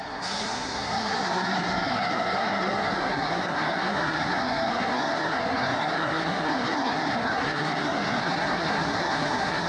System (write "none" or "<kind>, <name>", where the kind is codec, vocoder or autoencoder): codec, SNAC